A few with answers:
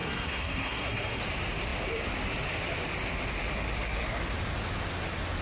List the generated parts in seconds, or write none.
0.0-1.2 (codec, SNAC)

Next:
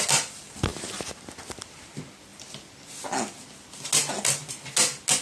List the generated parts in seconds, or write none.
none

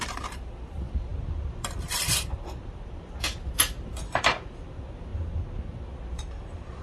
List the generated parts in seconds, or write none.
0.0-5.1 (vocoder, BigVGAN v2); 5.8-6.8

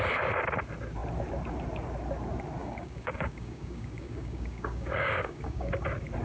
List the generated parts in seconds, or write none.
2.6-5.7 (codec, DAC)